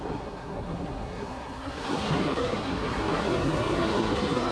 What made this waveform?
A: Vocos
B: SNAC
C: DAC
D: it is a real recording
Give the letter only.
B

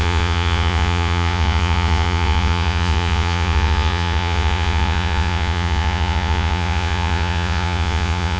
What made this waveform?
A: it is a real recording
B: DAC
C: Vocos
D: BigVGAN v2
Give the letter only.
C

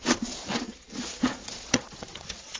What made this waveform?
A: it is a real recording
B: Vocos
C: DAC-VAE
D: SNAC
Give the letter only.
B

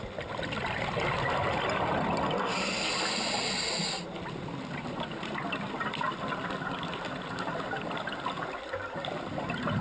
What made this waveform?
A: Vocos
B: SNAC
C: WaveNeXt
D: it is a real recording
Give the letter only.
D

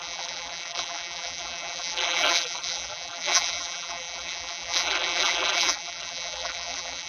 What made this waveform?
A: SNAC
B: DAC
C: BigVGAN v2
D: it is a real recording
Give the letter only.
C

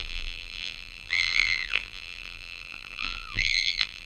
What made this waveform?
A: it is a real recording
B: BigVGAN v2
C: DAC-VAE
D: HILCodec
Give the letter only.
B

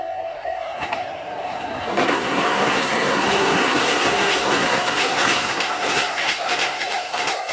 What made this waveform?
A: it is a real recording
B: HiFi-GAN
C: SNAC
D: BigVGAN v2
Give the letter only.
C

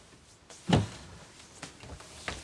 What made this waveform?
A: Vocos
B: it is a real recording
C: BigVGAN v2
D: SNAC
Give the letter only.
B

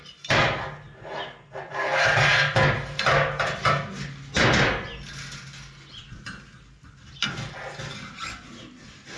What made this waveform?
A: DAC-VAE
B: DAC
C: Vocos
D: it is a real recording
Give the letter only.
D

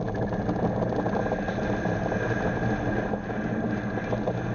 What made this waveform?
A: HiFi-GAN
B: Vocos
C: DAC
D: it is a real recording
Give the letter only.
D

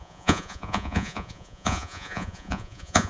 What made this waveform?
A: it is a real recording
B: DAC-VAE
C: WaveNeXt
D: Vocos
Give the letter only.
D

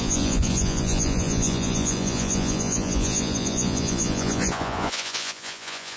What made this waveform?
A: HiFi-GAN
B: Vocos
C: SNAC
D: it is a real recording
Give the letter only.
B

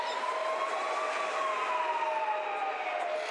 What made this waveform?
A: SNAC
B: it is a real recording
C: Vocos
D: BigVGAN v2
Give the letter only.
B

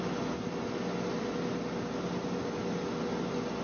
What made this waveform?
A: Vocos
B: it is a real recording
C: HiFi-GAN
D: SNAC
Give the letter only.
B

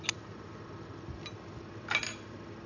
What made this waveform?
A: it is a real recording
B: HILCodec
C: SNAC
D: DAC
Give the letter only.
A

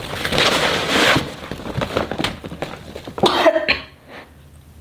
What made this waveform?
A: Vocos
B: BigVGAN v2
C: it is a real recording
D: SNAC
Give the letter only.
C